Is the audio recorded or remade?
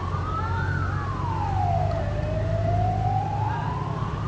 recorded